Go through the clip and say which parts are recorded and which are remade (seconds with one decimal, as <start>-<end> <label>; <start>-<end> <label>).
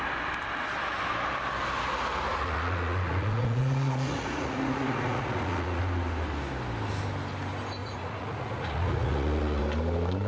0.0-2.3 recorded; 2.3-5.8 remade; 5.8-7.8 recorded; 7.8-9.6 remade; 9.6-10.3 recorded